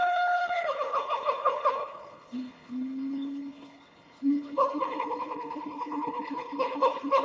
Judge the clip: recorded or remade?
remade